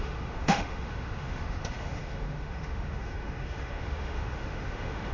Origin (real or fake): fake